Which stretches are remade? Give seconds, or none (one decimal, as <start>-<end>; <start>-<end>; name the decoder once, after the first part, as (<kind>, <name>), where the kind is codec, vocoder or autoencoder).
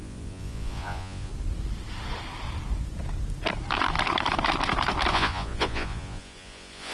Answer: 0.0-1.3 (vocoder, Vocos); 5.1-6.9